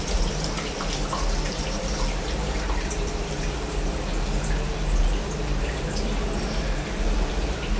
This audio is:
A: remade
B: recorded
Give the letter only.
A